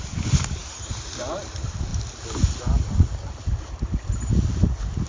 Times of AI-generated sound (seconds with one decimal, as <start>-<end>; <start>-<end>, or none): none